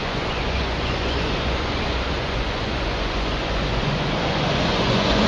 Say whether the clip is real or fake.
fake